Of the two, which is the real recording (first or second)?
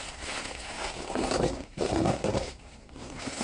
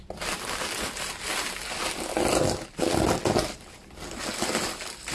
second